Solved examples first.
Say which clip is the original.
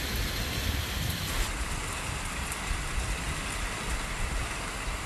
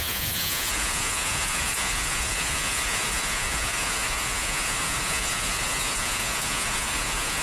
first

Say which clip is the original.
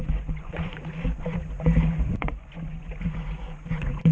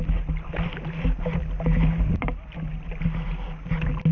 second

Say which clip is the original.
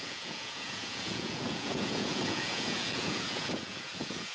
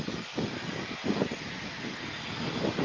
second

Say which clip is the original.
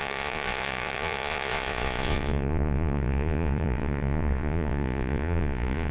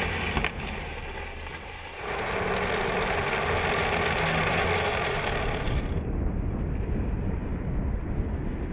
second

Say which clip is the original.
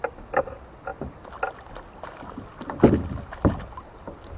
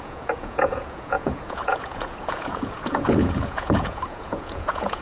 first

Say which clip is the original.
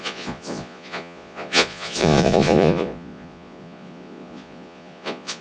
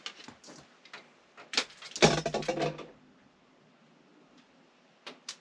second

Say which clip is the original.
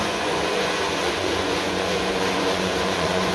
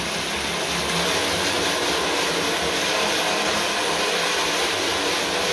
second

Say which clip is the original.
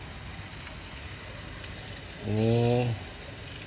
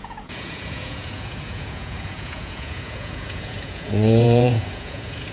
first